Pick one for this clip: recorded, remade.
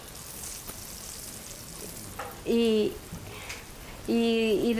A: recorded